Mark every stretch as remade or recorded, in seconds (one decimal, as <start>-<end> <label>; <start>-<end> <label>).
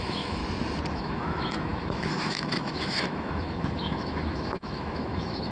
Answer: 0.0-0.4 remade; 0.4-0.9 recorded; 0.9-5.5 remade